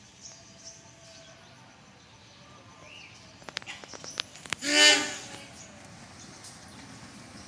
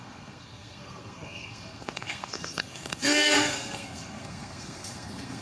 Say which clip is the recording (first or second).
first